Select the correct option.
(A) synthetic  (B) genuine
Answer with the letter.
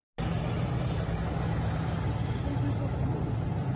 B